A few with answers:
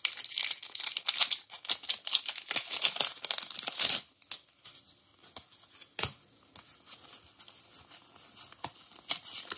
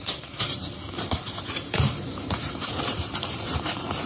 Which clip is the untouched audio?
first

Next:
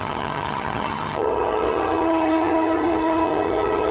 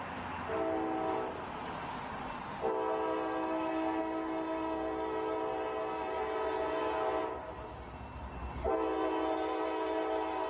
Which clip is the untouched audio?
second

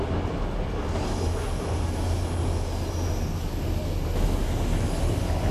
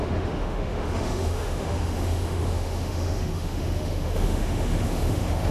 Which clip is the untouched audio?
first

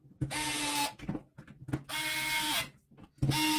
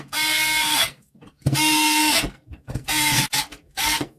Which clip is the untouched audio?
first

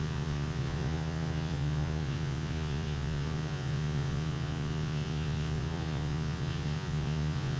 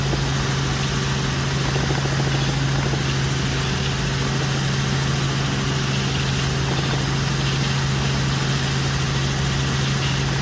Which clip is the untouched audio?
second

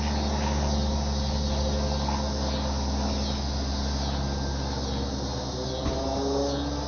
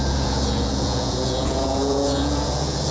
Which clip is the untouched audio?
first